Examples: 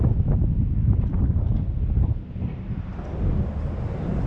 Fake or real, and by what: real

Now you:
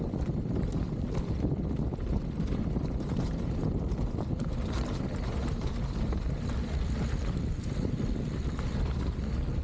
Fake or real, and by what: fake, vocoder, BigVGAN v2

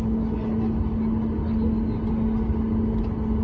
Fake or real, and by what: real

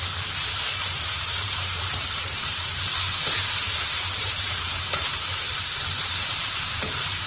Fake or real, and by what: fake, vocoder, BigVGAN v2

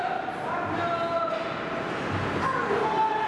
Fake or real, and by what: real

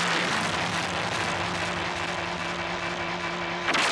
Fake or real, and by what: real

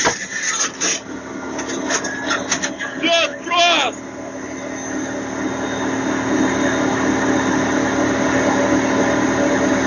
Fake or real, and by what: real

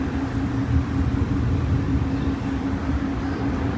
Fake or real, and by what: real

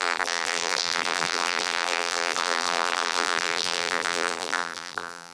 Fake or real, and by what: fake, vocoder, BigVGAN v2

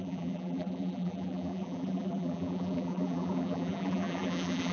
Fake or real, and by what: fake, vocoder, BigVGAN v2